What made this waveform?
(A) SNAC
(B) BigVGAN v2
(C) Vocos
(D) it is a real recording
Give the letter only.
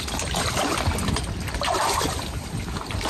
D